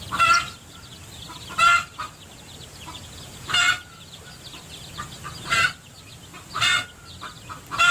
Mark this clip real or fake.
real